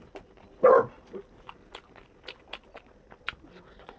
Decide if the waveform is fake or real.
real